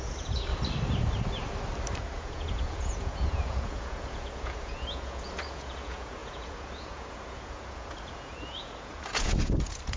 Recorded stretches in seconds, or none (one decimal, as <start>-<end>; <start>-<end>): 0.5-2.0